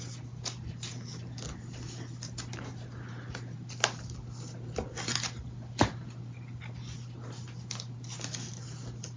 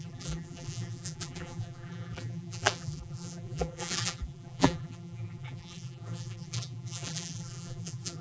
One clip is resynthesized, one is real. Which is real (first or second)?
first